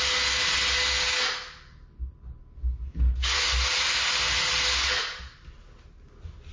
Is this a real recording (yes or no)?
yes